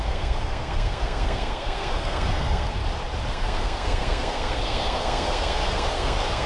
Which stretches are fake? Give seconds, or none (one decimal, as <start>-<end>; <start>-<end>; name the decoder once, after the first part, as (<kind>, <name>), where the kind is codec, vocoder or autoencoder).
0.0-2.8 (codec, SNAC); 3.3-6.5